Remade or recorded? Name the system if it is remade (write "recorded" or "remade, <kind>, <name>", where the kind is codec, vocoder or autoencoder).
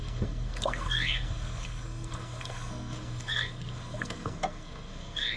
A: remade, codec, SNAC